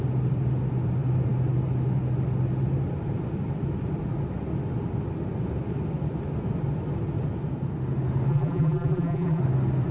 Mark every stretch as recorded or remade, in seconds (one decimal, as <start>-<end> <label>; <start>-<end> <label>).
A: 0.0-8.3 recorded; 8.3-9.4 remade; 9.4-9.9 recorded